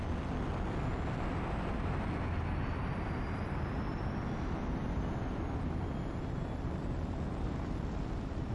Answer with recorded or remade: recorded